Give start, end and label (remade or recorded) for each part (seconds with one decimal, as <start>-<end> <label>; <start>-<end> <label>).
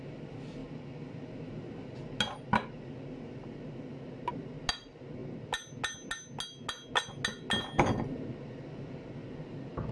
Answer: 0.0-9.9 recorded